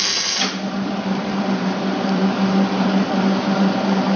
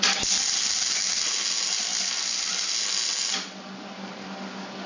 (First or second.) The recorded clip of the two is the second